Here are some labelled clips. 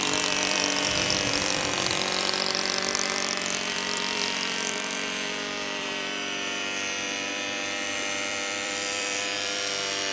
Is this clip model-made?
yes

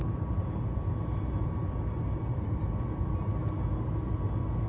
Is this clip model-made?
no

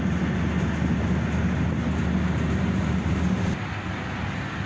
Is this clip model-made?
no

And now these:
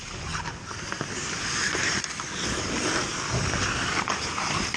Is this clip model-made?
no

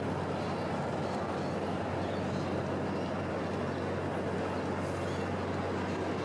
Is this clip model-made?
no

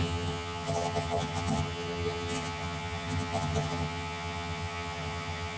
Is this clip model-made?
yes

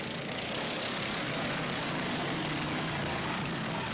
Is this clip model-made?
yes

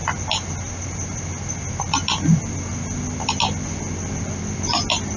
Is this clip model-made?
no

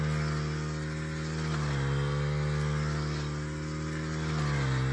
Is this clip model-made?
no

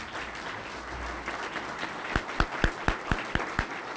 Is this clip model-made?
no